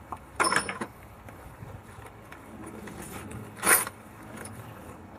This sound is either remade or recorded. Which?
remade